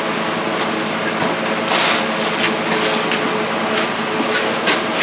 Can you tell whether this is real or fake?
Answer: real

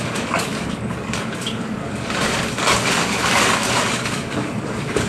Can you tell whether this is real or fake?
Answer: fake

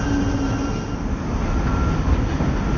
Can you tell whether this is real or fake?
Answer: real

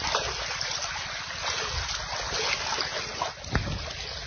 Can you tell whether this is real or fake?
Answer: real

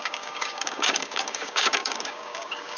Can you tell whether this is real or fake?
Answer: fake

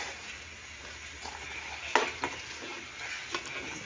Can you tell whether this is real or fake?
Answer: real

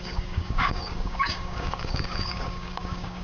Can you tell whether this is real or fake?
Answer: fake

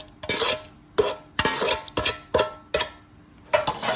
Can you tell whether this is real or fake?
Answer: real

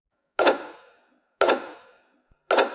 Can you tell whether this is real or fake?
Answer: real